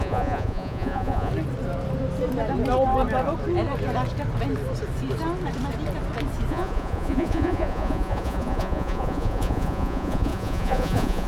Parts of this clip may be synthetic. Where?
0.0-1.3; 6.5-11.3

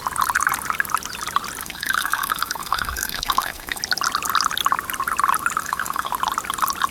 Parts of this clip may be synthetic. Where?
1.6-3.8; 5.6-6.1

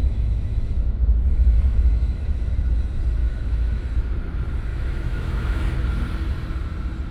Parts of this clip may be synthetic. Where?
0.0-2.5; 3.2-3.8; 4.7-5.6

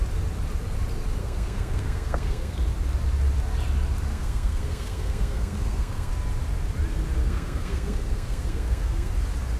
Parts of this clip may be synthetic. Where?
1.2-2.6; 4.1-6.1; 7.2-9.1

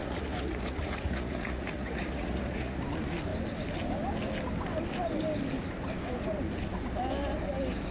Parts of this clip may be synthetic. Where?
0.0-2.8

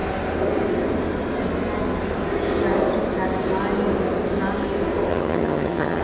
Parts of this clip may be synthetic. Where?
5.1-6.0

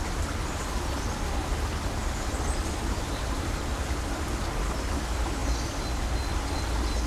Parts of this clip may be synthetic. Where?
2.0-3.5; 5.4-6.0